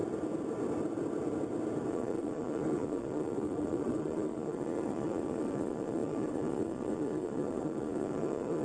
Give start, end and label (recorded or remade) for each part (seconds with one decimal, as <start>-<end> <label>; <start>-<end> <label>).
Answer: 0.0-1.9 recorded; 1.9-8.6 remade